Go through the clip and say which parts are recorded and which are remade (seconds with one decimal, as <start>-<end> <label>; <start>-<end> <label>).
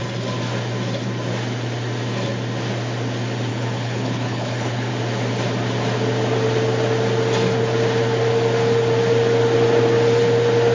0.0-3.5 recorded; 3.5-4.9 remade; 4.9-10.7 recorded